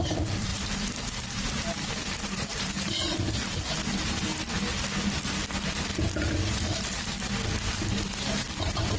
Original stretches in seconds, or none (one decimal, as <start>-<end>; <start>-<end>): 4.3-8.3